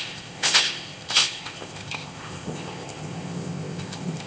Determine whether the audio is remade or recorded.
remade